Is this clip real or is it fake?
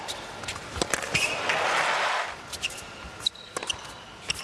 real